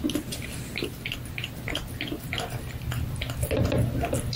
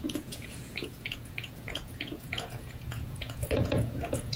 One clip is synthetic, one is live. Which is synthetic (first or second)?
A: second